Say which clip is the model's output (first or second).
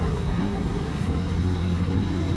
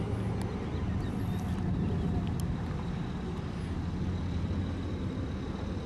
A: first